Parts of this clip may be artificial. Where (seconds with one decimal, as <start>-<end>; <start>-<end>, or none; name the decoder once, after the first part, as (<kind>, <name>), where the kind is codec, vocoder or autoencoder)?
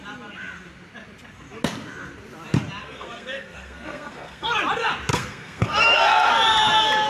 2.8-4.5 (codec, SNAC); 5.1-6.3